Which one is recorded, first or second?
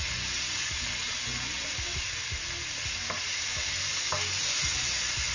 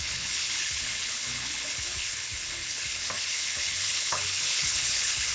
first